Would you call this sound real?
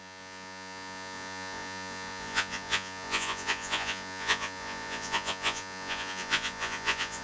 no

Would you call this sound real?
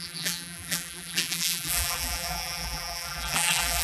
no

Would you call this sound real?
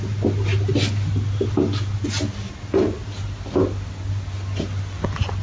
yes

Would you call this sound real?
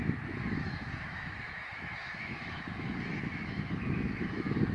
no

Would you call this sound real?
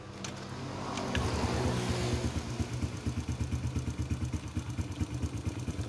yes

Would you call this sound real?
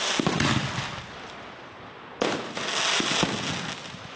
yes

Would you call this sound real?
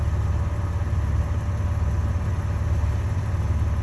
yes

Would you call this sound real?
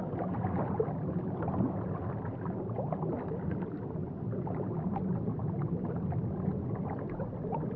yes